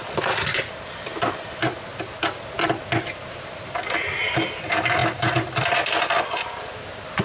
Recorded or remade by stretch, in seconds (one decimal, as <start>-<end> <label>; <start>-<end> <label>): 0.0-7.2 recorded